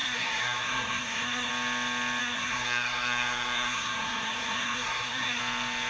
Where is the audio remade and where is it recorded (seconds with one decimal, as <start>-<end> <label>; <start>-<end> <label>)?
0.0-1.5 remade; 1.5-2.2 recorded; 2.2-5.4 remade; 5.4-5.9 recorded